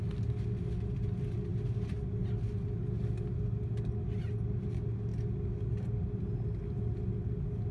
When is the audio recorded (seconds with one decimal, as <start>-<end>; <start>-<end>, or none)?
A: 0.0-7.7